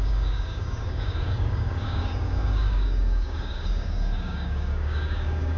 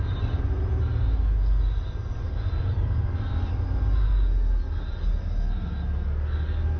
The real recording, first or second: second